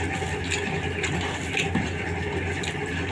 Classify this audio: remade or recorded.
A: recorded